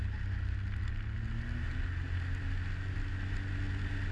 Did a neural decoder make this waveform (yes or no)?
no